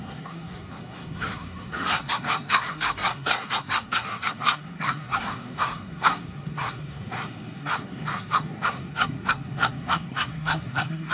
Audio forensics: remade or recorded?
remade